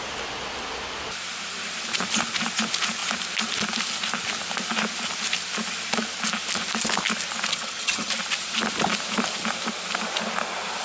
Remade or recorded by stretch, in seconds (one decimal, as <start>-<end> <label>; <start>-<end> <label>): 0.0-7.5 recorded; 7.5-8.1 remade; 8.1-10.8 recorded